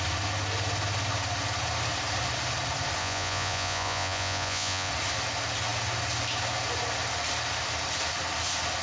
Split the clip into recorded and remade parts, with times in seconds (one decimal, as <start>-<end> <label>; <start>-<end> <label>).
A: 0.0-3.0 recorded; 3.0-4.9 remade; 4.9-8.8 recorded